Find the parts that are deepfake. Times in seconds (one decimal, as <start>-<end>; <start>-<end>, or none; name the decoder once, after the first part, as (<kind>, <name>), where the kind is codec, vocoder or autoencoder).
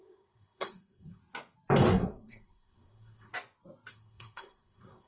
0.0-1.2 (codec, SNAC); 1.9-3.3; 3.9-5.1